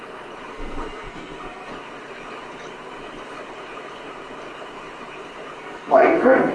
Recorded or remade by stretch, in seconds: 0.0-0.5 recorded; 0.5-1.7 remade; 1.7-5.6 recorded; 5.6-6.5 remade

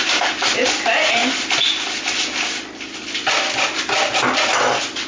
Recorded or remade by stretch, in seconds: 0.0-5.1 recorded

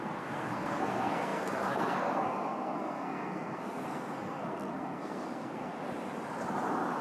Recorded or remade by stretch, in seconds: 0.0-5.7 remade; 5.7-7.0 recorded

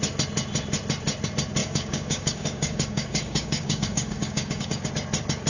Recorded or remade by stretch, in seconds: 0.0-1.6 recorded; 1.6-4.9 remade; 4.9-5.5 recorded